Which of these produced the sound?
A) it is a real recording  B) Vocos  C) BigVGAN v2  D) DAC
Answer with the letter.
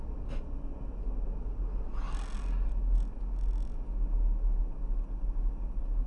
A